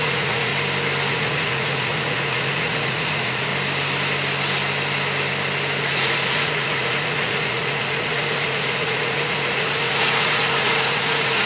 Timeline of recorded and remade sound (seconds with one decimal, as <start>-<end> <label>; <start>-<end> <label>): 0.0-0.5 remade; 0.5-1.1 recorded; 1.1-3.5 remade; 3.5-5.8 recorded; 5.8-11.5 remade